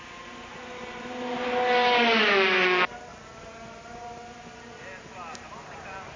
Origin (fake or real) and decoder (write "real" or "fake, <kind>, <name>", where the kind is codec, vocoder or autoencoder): real